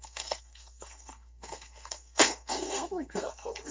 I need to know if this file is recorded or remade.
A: remade